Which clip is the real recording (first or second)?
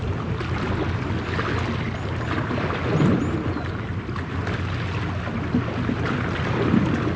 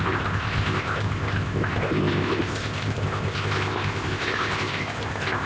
first